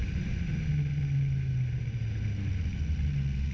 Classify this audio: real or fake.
real